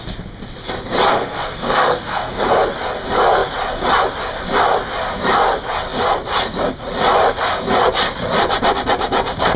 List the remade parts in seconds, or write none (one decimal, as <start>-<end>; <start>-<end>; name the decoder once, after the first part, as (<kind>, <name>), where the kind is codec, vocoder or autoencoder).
1.1-2.6 (codec, SNAC)